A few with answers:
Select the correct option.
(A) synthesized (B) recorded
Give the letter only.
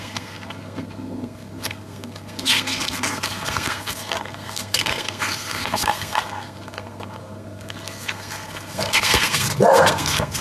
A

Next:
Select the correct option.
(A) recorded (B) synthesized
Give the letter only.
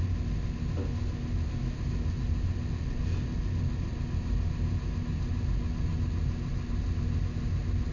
A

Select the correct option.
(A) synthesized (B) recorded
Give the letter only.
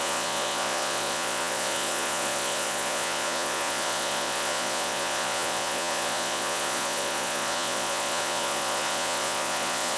A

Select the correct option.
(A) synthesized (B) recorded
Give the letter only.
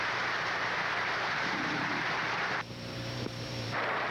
A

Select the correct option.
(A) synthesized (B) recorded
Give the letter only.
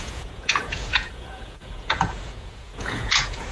A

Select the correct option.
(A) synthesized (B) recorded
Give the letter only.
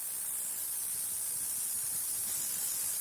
B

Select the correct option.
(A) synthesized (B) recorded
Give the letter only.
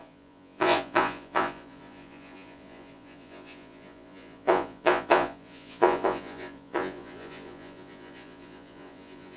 A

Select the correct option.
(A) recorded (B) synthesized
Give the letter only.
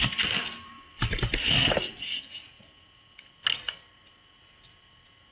A